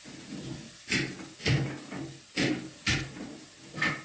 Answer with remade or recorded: recorded